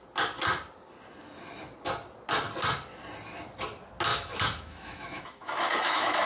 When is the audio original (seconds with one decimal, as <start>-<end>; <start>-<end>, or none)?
0.0-4.1

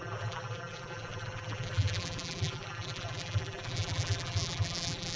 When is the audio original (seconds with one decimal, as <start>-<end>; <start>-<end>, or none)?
none

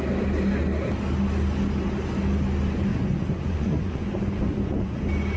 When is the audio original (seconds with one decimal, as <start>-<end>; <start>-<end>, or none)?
0.0-2.9; 5.0-5.4